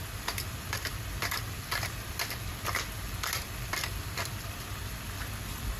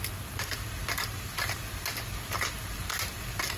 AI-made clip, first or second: first